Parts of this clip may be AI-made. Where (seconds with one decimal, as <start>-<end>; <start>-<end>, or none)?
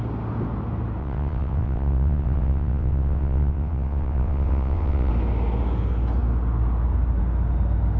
1.0-5.1